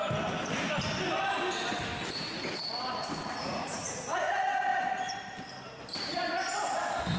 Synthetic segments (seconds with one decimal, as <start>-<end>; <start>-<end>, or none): 2.9-4.7